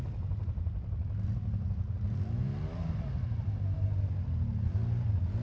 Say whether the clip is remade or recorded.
recorded